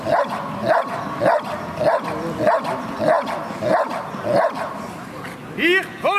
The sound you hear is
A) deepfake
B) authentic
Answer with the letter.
B